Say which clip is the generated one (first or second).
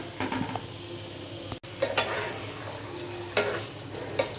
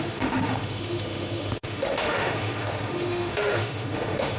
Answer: second